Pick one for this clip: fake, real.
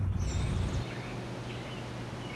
real